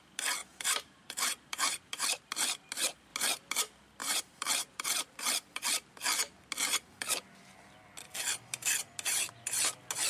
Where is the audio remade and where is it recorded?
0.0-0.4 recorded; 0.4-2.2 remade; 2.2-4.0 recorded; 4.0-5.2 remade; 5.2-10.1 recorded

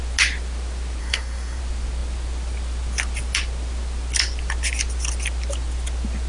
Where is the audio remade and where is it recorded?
0.0-1.0 recorded; 1.0-1.6 remade; 1.6-6.3 recorded

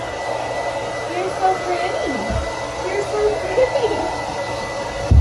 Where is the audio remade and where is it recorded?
0.0-5.2 recorded

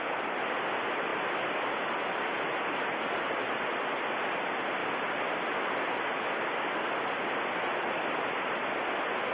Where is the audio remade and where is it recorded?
0.0-9.3 recorded